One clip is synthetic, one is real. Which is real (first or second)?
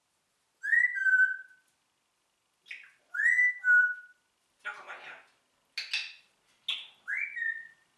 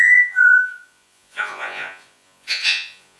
first